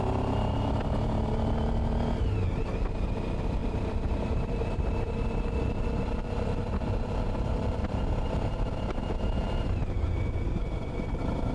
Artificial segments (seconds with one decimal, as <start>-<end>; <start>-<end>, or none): 3.6-4.8